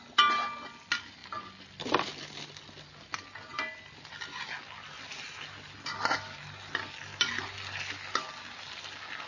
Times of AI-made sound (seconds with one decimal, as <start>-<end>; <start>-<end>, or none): none